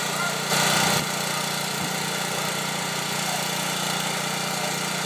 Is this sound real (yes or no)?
yes